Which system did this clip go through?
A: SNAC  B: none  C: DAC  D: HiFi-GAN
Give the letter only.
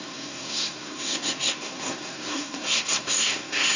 A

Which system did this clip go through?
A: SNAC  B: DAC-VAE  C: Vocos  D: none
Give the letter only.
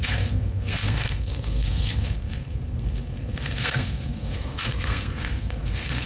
A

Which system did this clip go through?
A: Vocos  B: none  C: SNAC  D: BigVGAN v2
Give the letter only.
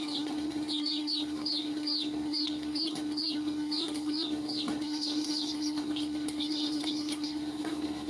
C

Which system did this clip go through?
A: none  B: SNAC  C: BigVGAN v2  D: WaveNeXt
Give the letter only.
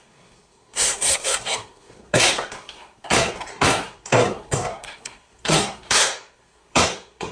B